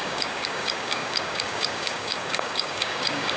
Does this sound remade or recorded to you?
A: remade